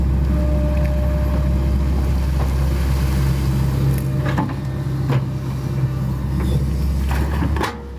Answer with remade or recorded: recorded